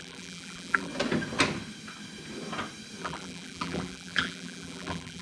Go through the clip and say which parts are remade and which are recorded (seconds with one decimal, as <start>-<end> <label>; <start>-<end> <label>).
0.0-0.9 remade; 0.9-3.0 recorded; 3.0-5.2 remade